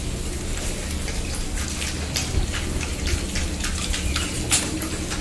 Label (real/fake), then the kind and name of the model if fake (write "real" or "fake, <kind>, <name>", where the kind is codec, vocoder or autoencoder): real